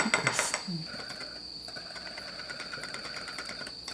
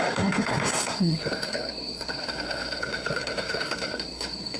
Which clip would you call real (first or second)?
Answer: first